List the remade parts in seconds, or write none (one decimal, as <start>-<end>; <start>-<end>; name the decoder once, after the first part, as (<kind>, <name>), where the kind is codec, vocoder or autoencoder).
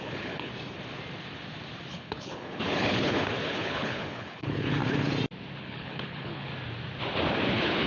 0.0-0.5 (codec, HILCodec); 1.9-4.8; 5.6-6.5; 7.5-7.9